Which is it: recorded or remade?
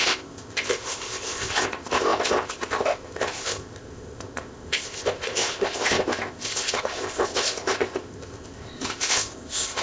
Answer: remade